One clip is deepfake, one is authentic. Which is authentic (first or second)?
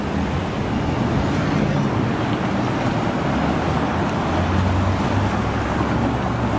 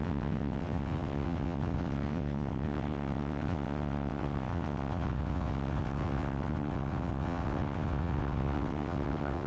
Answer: first